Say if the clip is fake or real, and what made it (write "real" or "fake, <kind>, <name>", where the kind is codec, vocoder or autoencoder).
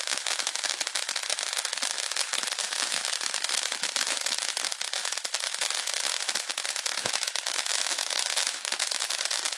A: fake, autoencoder, DAC-VAE